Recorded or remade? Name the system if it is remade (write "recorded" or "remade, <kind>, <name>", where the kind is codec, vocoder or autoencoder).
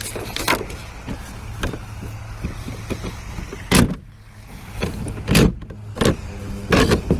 recorded